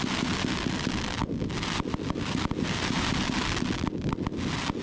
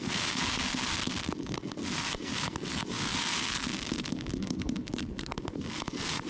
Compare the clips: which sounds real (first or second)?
first